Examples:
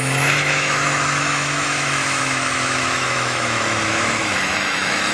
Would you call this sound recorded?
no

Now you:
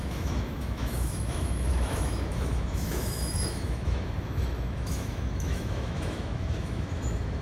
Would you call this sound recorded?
no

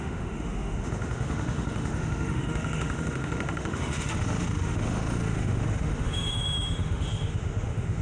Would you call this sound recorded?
no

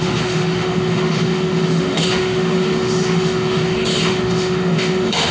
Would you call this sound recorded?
no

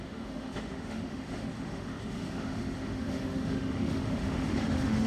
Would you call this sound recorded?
no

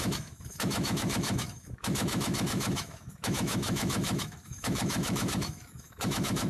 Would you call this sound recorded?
no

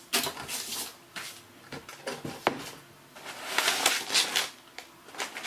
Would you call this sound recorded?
yes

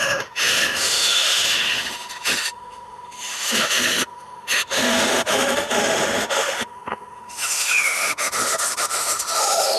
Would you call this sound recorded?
no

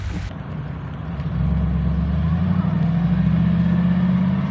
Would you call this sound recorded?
yes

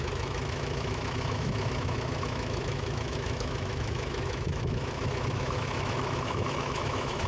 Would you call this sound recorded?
no